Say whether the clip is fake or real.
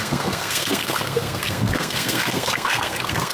fake